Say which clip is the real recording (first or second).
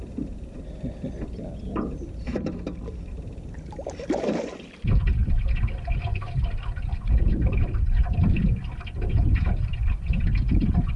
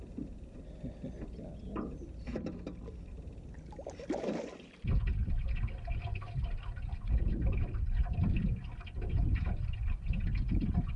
second